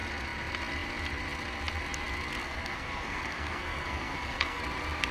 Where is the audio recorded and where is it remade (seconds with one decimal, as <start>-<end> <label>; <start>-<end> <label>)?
0.0-2.4 recorded; 2.4-4.6 remade; 4.6-5.1 recorded